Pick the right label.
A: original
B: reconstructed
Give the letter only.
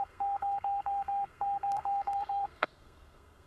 B